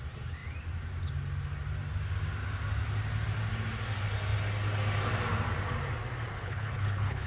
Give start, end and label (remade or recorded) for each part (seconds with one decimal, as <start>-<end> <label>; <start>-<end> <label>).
0.0-6.3 recorded; 6.3-7.3 remade